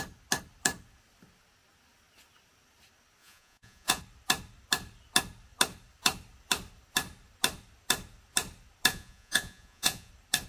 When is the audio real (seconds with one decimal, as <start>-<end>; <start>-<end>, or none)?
0.0-3.2; 4.0-8.9; 10.1-10.5